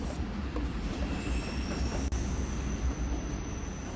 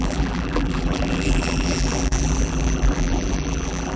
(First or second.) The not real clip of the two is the second